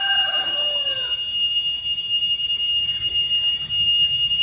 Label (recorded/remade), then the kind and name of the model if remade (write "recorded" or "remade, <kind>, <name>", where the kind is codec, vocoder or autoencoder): recorded